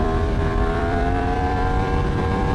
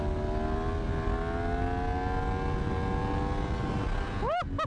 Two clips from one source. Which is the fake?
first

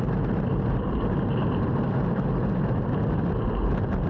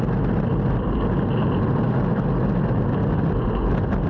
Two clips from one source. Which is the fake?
first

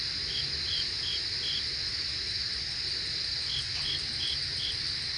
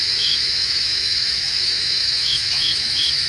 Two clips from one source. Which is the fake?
second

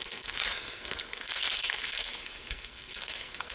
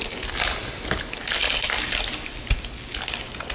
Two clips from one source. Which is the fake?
first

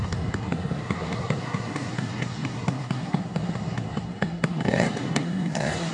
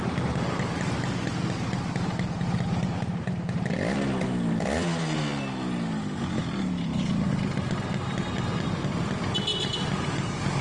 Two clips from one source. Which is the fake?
first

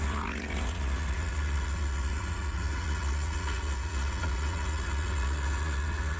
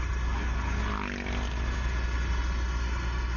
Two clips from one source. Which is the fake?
first